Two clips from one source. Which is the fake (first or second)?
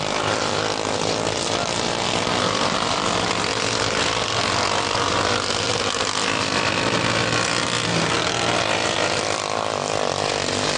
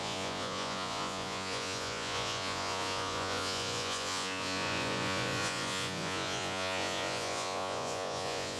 second